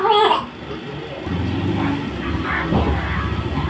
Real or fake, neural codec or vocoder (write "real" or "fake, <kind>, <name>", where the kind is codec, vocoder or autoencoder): real